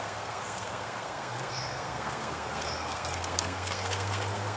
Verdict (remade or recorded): remade